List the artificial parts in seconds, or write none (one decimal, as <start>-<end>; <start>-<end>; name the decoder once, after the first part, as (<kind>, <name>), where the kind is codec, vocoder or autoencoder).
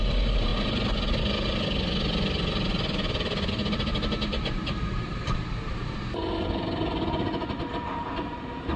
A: 0.0-0.5 (vocoder, BigVGAN v2); 3.5-6.2; 7.8-8.8